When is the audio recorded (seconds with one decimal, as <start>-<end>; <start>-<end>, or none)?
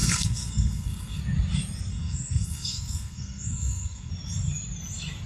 1.2-1.9; 4.1-5.3